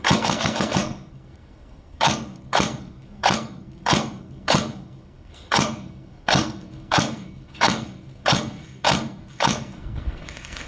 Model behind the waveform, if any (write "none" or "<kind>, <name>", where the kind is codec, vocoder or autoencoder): codec, SNAC